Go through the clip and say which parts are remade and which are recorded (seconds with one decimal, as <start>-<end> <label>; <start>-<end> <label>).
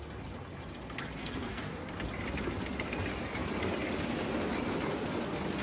0.0-1.2 recorded; 1.2-1.7 remade; 1.7-5.6 recorded